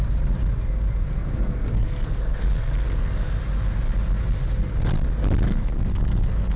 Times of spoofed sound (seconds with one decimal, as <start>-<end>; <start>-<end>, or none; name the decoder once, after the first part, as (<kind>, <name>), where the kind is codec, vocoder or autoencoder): 1.0-3.4 (codec, SNAC); 5.5-6.6